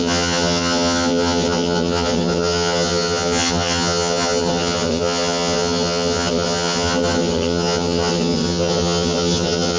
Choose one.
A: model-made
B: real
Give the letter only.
A